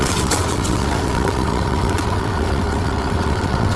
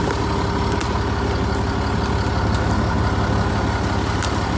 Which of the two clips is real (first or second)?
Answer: second